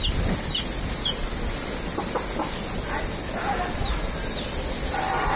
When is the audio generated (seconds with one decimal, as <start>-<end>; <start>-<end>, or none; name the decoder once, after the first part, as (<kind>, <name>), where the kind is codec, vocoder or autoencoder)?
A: none